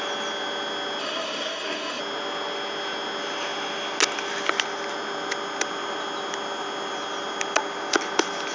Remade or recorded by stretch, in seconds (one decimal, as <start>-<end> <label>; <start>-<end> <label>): 0.0-1.0 recorded; 1.0-2.0 remade; 2.0-8.5 recorded